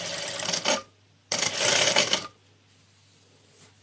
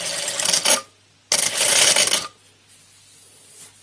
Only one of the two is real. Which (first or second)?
second